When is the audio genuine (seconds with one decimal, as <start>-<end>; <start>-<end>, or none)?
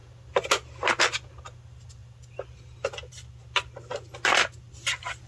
0.0-5.3